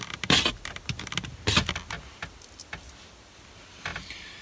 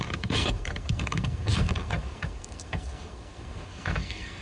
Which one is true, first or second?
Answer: first